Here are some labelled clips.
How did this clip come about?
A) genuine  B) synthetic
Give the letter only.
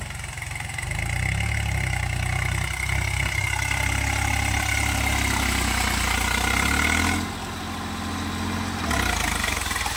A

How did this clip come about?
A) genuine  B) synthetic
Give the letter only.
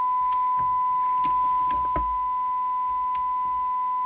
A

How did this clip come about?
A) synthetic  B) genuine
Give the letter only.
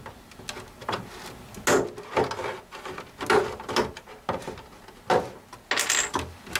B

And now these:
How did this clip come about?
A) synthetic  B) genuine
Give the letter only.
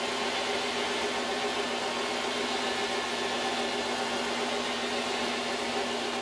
B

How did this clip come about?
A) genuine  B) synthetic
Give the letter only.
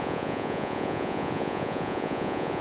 B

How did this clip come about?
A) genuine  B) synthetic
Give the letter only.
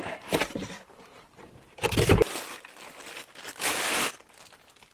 A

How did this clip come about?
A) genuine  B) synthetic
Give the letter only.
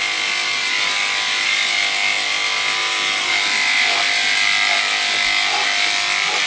A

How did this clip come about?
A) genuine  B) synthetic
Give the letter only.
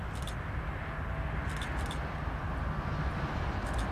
A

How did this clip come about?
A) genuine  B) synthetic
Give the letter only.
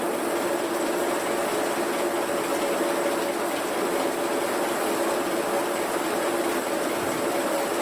A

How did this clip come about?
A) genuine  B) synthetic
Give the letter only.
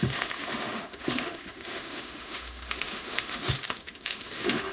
B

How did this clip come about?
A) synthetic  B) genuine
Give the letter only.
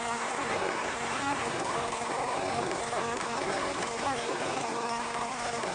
A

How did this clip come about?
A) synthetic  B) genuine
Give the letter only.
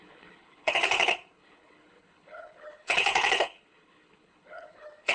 A